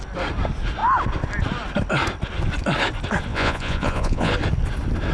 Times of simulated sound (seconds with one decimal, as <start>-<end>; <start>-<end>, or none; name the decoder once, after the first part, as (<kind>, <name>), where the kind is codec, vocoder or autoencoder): 3.3-4.3 (vocoder, Vocos)

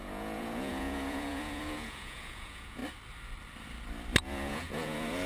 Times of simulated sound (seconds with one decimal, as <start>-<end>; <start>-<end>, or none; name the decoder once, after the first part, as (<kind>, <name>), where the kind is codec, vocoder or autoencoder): 0.0-2.8 (vocoder, Vocos); 4.2-5.3